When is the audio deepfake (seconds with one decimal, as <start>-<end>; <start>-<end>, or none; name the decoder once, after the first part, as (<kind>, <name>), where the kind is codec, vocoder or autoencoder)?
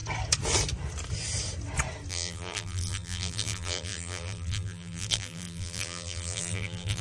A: 2.1-7.0 (vocoder, BigVGAN v2)